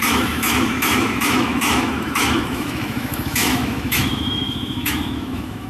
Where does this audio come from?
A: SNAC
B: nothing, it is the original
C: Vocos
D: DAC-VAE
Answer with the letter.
D